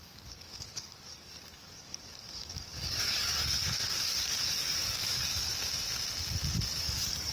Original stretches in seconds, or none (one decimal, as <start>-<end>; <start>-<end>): 5.3-6.8